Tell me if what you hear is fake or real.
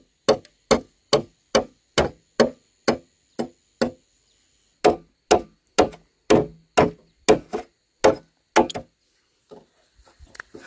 real